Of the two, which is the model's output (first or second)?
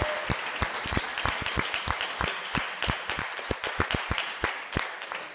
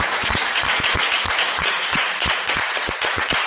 second